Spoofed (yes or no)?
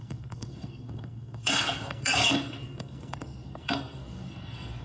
yes